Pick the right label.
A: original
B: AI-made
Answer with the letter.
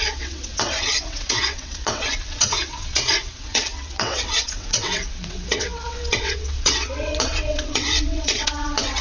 B